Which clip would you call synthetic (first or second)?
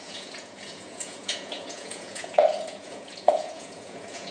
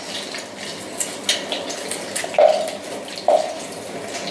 first